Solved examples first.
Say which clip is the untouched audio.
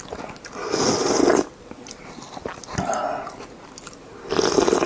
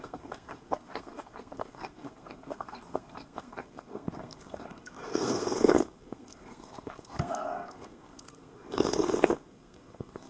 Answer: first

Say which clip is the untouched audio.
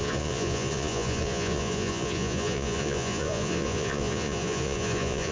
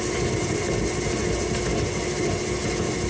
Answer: second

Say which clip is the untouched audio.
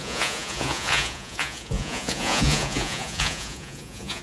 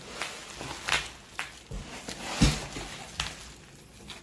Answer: second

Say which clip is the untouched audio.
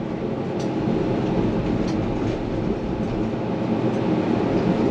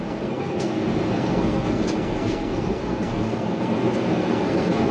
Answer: first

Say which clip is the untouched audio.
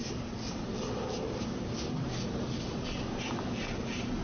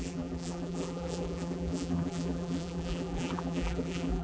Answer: first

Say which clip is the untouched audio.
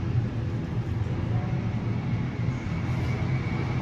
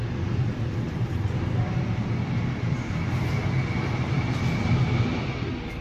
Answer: first